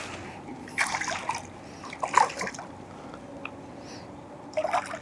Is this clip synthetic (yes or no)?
no